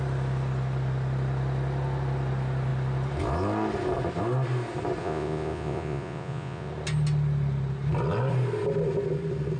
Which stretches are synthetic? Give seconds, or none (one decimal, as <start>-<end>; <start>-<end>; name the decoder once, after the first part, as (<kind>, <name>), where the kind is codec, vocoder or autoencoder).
5.0-6.7 (vocoder, Vocos)